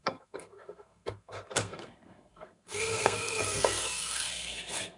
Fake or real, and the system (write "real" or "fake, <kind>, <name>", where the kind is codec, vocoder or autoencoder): fake, codec, SNAC